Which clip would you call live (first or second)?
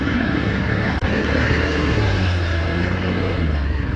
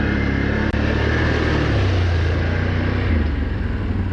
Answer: second